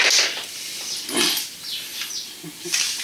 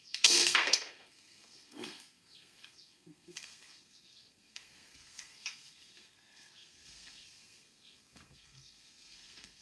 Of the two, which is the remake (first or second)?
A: second